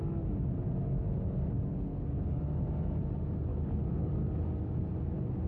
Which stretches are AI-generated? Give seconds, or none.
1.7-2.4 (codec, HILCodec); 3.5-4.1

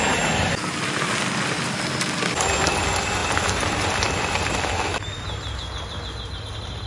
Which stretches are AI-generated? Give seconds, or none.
none